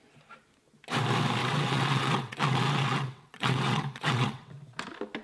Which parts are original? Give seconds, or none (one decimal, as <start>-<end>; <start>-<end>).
0.0-1.4; 4.5-5.2